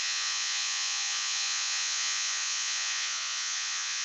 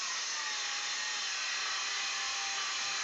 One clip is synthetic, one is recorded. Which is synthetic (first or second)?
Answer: first